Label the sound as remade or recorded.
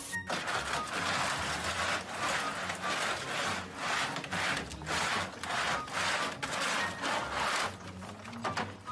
recorded